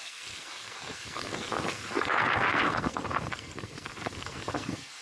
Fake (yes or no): yes